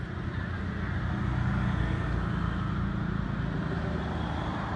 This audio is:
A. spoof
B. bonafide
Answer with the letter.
B